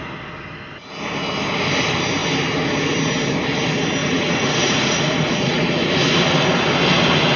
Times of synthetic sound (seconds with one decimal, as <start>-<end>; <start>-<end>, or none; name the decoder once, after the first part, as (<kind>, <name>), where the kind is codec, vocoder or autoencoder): 4.0-5.7 (vocoder, Vocos)